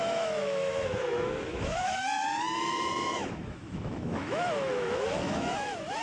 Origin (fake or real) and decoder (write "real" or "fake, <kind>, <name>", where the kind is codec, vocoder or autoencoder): fake, autoencoder, DAC-VAE